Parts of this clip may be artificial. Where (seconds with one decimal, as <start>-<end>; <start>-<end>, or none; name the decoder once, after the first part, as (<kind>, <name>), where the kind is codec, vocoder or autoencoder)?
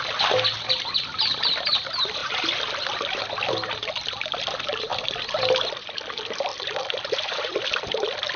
6.5-7.5 (vocoder, BigVGAN v2)